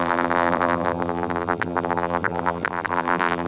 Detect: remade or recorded remade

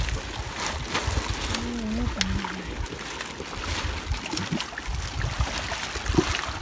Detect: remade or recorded recorded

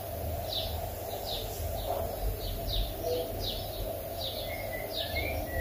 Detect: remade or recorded recorded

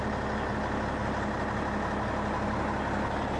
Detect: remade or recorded recorded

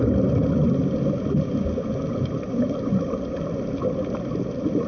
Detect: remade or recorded recorded